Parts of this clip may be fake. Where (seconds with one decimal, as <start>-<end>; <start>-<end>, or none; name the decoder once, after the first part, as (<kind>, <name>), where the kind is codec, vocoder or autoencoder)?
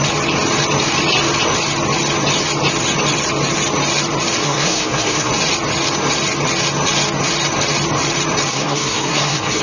4.4-5.3 (codec, SNAC); 8.5-9.6